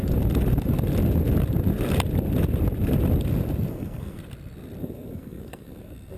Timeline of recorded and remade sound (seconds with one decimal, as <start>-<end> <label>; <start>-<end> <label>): 0.0-3.7 recorded; 3.7-4.2 remade; 4.2-4.8 recorded; 4.8-6.2 remade